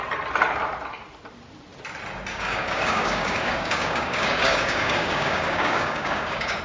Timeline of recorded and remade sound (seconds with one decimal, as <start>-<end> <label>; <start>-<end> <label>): 0.0-2.3 recorded; 2.3-6.6 remade